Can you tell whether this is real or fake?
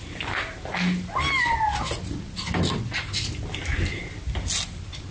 real